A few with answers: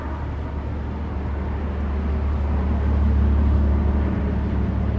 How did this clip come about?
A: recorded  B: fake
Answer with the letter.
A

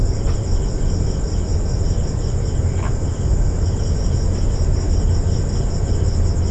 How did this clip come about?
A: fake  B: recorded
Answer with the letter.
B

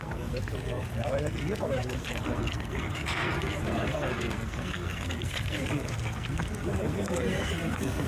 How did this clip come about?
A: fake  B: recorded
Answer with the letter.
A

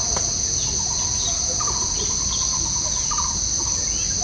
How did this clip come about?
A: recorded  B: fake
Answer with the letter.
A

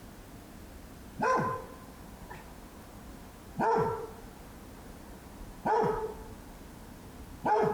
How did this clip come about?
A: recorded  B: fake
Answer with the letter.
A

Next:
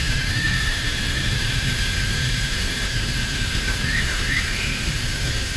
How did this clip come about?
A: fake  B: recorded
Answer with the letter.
A